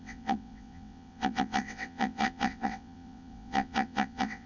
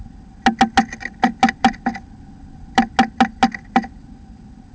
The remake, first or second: first